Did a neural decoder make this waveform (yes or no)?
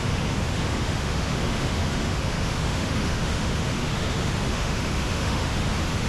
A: yes